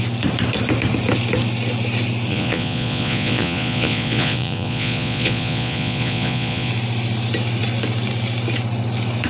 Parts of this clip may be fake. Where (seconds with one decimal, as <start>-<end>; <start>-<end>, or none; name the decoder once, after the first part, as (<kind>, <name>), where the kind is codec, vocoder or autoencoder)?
2.3-6.7 (vocoder, Vocos)